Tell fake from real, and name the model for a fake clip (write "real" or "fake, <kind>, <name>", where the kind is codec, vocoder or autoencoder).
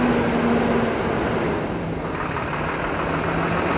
real